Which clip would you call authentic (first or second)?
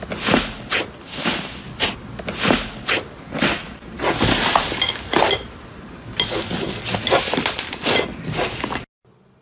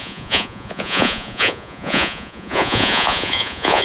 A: first